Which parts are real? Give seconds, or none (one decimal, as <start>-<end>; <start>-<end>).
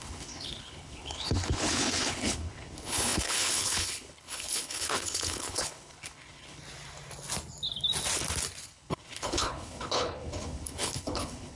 6.6-8.6